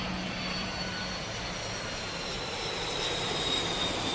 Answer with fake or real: real